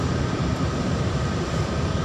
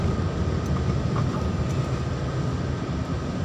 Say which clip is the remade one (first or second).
first